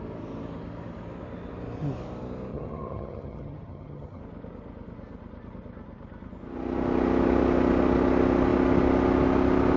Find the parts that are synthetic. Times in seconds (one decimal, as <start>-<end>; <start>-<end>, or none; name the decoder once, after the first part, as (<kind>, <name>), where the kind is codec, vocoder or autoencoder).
2.5-4.2 (vocoder, HiFi-GAN)